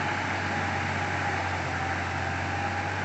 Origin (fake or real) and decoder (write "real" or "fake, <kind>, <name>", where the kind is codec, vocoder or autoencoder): real